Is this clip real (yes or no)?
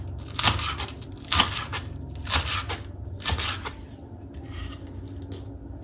yes